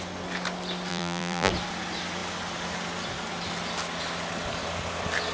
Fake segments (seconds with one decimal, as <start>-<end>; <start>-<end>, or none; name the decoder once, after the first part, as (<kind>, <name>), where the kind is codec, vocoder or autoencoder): 0.9-1.5 (vocoder, BigVGAN v2)